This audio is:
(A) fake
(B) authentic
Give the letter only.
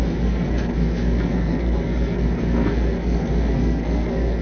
A